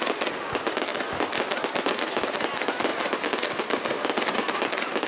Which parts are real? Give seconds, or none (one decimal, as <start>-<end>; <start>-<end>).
0.0-5.1